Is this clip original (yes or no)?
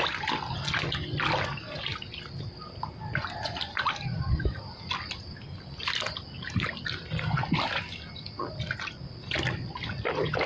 yes